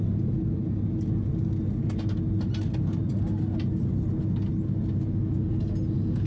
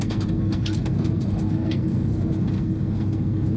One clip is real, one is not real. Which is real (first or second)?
first